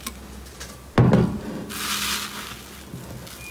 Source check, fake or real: real